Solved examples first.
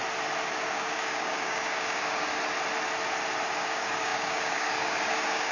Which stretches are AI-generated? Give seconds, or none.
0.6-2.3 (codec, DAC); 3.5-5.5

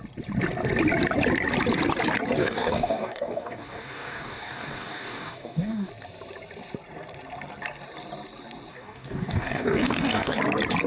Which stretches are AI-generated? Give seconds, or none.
2.4-5.9 (codec, DAC); 8.7-10.4

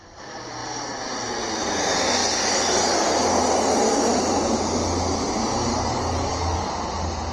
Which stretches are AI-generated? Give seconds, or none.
5.7-6.7 (codec, DAC)

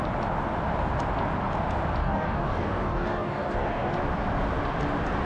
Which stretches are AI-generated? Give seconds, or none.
2.0-3.9 (codec, DAC)

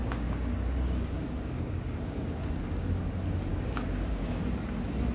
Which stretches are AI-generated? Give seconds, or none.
0.0-3.0 (codec, DAC); 3.5-4.4

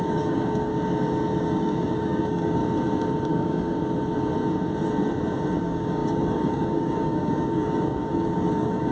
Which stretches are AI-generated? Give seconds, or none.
0.0-0.7 (codec, DAC); 1.4-2.6; 3.3-3.8; 5.6-8.9